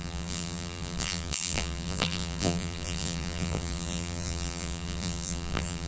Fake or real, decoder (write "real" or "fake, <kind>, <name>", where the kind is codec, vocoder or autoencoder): fake, vocoder, BigVGAN v2